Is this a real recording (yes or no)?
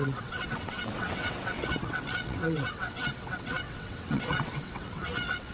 no